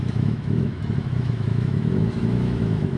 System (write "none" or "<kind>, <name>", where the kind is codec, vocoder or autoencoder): autoencoder, DAC-VAE